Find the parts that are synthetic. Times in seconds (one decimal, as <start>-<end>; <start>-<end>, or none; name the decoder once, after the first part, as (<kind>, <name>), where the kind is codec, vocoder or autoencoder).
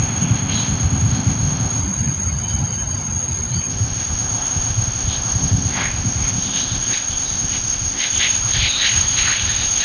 0.0-1.8 (codec, ZipCodec); 3.7-9.8